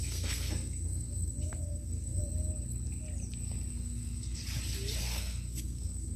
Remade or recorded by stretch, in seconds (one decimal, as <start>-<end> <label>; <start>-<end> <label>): 0.0-2.2 remade; 2.2-3.7 recorded; 3.7-4.4 remade; 4.4-5.0 recorded; 5.0-6.2 remade